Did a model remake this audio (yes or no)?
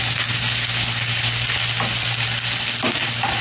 no